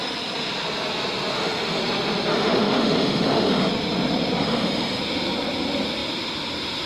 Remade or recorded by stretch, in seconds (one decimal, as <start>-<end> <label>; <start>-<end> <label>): 0.0-1.3 recorded; 1.3-1.8 remade; 1.8-2.3 recorded; 2.3-3.7 remade; 3.7-4.4 recorded; 4.4-5.0 remade; 5.0-6.9 recorded